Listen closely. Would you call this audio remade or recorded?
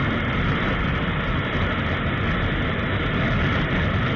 recorded